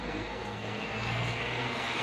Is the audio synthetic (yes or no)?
yes